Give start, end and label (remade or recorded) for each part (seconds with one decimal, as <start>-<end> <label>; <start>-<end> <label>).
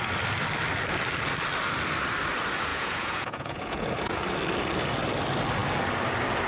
0.0-2.7 recorded; 2.7-4.2 remade; 4.2-6.5 recorded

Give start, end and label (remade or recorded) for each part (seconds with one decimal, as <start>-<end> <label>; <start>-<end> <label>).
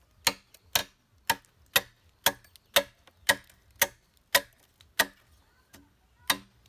0.0-6.7 recorded